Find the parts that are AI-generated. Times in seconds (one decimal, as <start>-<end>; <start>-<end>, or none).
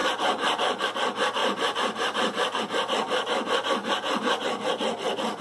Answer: 0.0-0.8; 1.4-2.6; 3.8-4.9